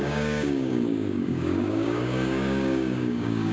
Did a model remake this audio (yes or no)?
yes